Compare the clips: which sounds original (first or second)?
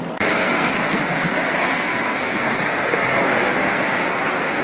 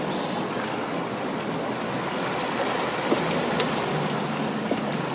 second